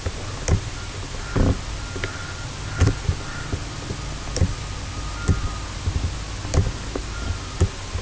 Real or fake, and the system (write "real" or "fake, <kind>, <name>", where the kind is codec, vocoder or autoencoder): real